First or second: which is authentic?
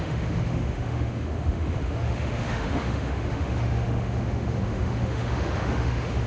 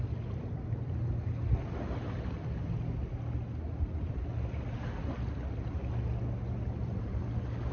second